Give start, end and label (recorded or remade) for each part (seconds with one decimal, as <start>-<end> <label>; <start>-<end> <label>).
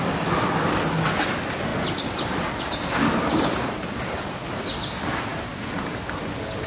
0.0-6.7 recorded